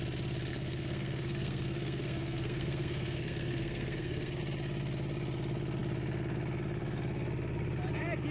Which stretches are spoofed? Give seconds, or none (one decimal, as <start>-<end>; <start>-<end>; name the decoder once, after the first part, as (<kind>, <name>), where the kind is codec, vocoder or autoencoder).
0.5-4.4 (codec, SNAC)